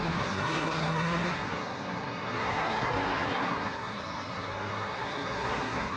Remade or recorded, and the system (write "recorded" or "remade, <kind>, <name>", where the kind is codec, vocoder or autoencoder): remade, codec, SNAC